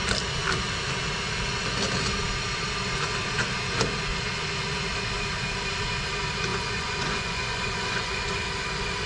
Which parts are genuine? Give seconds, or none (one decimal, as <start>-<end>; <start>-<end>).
0.0-6.5; 8.3-9.1